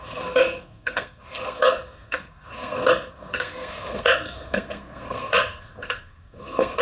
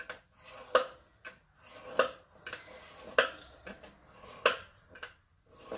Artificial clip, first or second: first